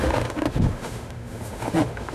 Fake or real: fake